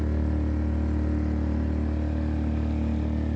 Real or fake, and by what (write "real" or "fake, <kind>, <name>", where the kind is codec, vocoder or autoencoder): real